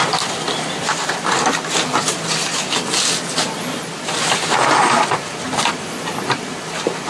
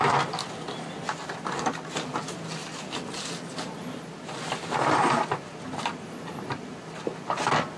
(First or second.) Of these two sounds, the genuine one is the second